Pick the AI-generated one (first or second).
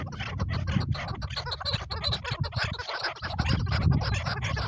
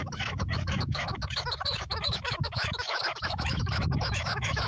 second